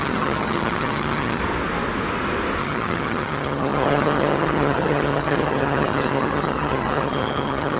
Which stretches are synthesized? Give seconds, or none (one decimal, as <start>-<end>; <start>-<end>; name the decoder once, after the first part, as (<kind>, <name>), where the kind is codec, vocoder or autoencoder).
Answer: 0.0-1.4 (vocoder, HiFi-GAN); 2.6-7.8